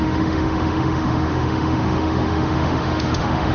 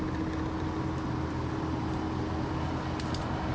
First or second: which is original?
second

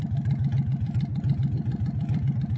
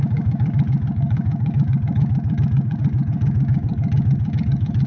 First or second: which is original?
first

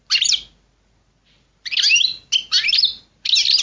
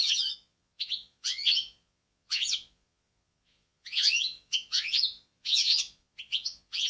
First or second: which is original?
first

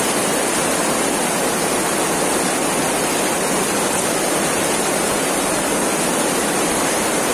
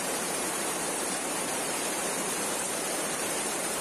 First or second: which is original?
first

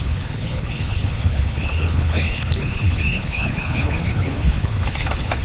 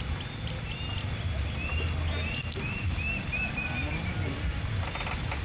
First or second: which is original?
second